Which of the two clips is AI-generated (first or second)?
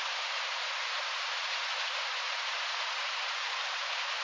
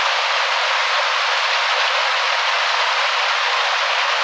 first